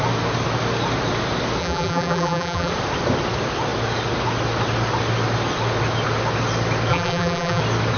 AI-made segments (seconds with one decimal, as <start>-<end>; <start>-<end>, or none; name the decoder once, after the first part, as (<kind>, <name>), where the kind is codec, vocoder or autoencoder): 1.6-2.7 (vocoder, BigVGAN v2); 6.9-7.6